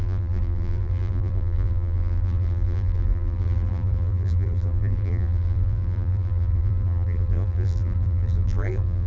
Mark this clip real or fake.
fake